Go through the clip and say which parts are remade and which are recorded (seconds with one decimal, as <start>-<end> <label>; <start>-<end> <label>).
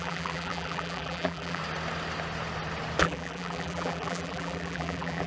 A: 0.0-1.6 remade; 1.6-3.0 recorded; 3.0-5.3 remade